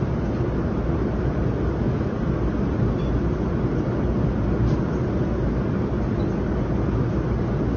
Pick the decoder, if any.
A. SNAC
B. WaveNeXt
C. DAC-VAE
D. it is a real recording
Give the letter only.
D